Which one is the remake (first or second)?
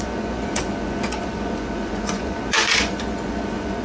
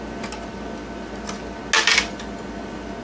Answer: first